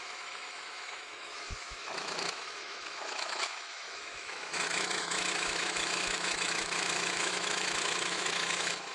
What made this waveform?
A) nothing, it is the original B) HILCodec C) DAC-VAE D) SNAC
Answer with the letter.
C